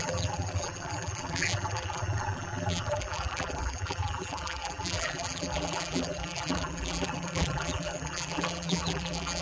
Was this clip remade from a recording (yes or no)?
yes